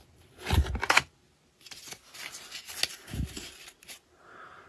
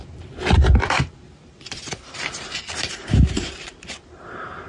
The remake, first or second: second